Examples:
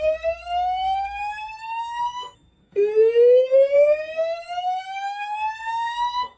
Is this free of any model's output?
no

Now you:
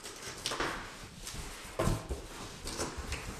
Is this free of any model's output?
yes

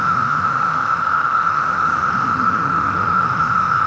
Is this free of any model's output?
no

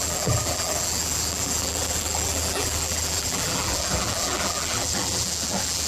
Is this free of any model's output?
no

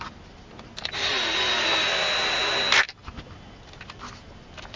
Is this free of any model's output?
yes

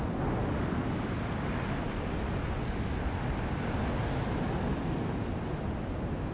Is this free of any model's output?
yes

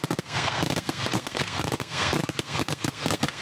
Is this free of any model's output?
no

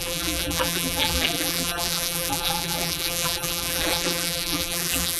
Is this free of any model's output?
no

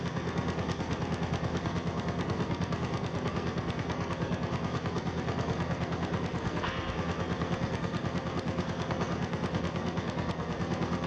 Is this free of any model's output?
no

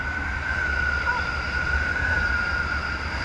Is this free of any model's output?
yes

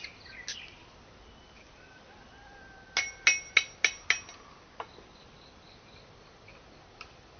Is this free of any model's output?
yes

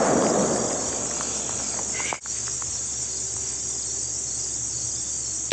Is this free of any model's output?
yes